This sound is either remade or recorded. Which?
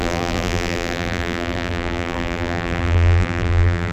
remade